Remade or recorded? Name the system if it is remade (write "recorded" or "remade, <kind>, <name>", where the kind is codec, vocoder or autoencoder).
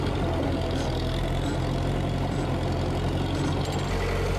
recorded